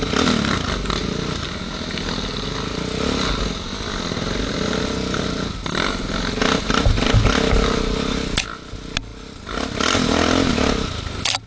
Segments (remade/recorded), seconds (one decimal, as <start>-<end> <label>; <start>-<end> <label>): 0.0-11.5 recorded